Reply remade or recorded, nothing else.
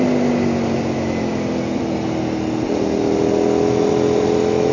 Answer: recorded